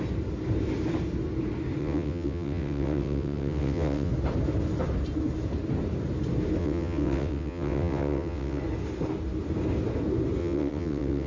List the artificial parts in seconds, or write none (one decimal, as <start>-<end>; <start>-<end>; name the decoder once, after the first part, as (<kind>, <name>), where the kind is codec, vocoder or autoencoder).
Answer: 1.8-4.1 (vocoder, WaveNeXt); 6.6-8.6; 10.4-11.3